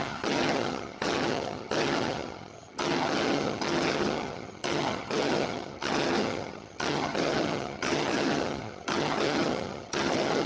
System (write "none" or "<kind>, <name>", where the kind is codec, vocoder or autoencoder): vocoder, HiFi-GAN